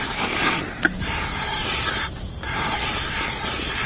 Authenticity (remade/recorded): remade